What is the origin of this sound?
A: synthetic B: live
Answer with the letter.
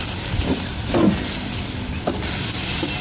B